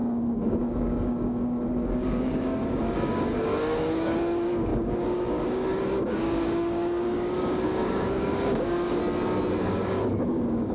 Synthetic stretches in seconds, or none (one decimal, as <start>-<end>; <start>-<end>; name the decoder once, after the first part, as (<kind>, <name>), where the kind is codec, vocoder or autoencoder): 0.0-9.0 (codec, DAC); 9.6-10.7